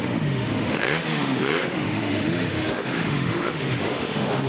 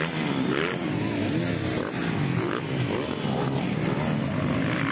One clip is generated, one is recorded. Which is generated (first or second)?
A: first